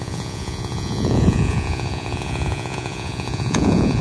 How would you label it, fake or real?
fake